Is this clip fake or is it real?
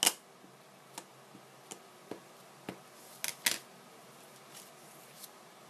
real